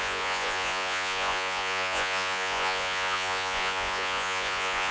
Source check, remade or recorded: remade